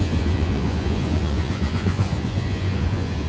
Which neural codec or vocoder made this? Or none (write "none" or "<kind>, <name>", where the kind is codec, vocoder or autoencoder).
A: vocoder, Vocos